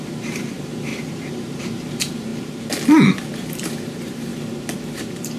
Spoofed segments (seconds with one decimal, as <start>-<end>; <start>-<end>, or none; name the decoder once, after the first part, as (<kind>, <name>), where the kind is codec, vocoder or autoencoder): 0.0-2.3 (vocoder, BigVGAN v2); 3.3-4.3; 5.0-5.4